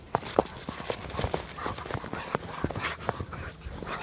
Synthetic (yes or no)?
no